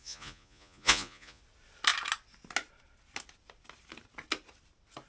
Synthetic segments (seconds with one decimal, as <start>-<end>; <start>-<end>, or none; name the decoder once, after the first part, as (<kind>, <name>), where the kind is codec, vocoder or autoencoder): 0.0-1.4 (vocoder, Vocos)